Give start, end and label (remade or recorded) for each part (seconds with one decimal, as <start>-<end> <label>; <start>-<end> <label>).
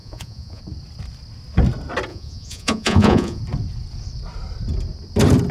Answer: 0.0-0.6 remade; 0.6-2.1 recorded; 2.1-3.4 remade; 3.4-5.5 recorded